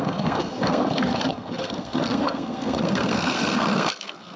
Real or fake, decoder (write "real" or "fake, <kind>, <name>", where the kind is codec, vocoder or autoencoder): fake, codec, SNAC